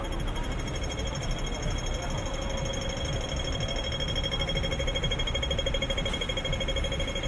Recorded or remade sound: recorded